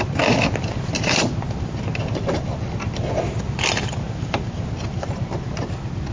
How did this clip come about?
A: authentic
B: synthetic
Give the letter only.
A